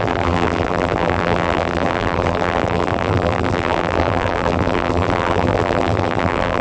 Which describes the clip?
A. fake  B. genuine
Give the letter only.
A